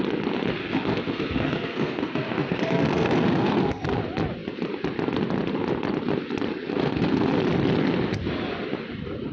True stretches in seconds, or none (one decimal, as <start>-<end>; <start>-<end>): 0.0-0.6; 4.0-6.5; 7.3-9.3